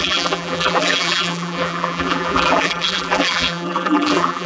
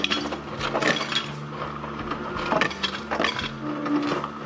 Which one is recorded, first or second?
second